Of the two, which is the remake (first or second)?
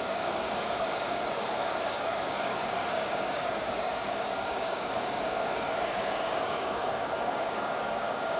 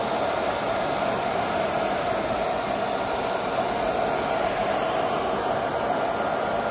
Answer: first